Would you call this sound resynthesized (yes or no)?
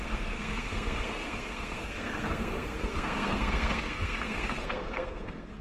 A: yes